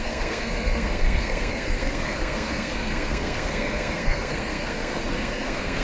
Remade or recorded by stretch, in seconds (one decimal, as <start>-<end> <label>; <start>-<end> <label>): 0.0-5.8 remade